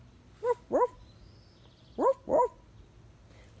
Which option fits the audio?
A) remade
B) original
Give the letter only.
B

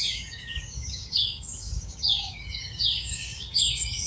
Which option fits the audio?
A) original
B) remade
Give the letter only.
B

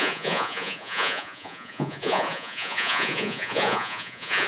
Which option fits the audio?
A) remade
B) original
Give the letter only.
A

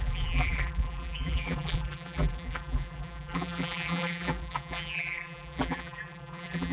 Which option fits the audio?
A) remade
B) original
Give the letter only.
A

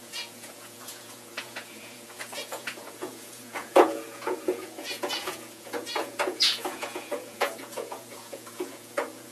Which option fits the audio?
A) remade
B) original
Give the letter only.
A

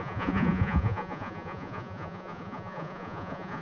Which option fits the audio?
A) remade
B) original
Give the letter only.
A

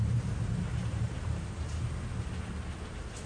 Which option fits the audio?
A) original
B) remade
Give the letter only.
A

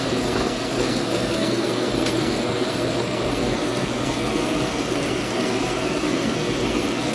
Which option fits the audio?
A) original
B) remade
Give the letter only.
B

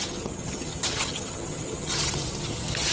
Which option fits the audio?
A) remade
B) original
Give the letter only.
A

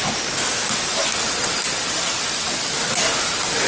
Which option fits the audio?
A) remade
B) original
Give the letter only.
B